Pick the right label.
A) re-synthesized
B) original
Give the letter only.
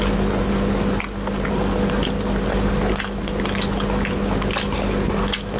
B